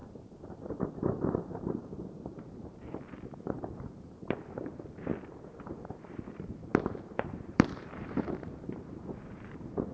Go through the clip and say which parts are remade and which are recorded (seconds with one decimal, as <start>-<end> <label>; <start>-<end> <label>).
0.0-5.1 remade; 5.1-5.6 recorded; 5.6-9.9 remade